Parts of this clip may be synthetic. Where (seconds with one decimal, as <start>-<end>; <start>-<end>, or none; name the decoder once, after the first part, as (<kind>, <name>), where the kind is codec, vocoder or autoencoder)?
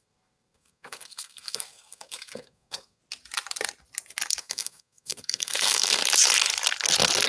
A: 0.0-3.0 (codec, SNAC); 4.4-6.0